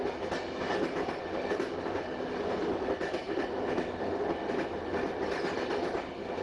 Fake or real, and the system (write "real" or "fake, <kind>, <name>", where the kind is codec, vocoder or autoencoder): real